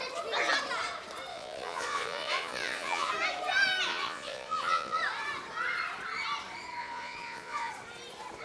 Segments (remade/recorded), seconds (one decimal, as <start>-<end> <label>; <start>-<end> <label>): 0.0-1.3 recorded; 1.3-3.1 remade; 3.1-3.9 recorded; 3.9-5.0 remade; 5.0-6.8 recorded; 6.8-7.7 remade; 7.7-8.4 recorded